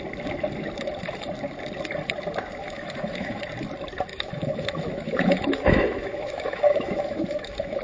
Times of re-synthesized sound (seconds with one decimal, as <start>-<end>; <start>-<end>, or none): 2.6-3.4; 4.1-7.8